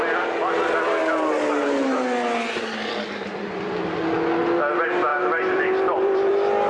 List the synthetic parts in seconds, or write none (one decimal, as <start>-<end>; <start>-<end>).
5.1-6.3